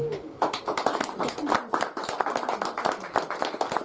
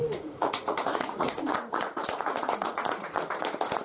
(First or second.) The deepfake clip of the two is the second